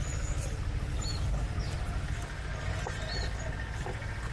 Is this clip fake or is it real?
real